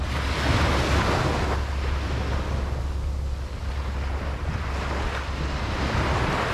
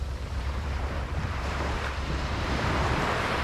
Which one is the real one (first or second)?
first